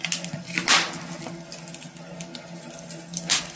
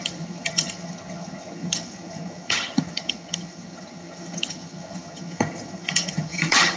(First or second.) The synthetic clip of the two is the second